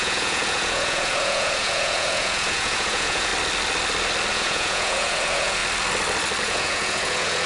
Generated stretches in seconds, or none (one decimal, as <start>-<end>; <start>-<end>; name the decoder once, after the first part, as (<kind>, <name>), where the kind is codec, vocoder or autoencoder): 0.0-3.3 (vocoder, Vocos); 4.3-5.6; 6.4-7.5